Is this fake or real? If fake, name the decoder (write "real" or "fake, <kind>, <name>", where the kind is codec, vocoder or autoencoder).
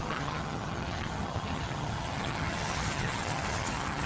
fake, vocoder, HiFi-GAN